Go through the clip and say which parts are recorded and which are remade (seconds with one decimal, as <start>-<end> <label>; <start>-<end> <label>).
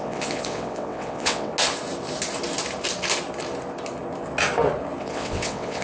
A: 0.0-1.5 remade; 1.5-5.0 recorded; 5.0-5.8 remade